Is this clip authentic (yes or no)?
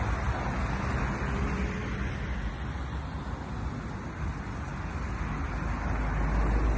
yes